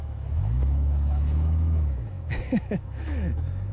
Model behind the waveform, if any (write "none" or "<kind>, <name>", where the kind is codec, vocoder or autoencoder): autoencoder, DAC-VAE